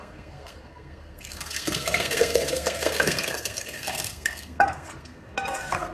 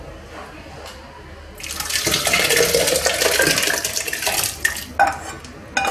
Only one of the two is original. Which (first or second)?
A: second